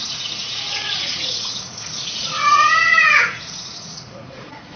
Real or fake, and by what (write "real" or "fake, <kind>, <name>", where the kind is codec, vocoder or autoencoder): fake, vocoder, Vocos